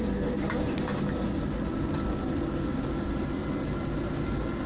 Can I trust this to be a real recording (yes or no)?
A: yes